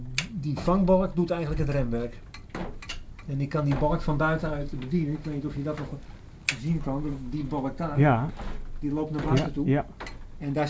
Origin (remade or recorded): recorded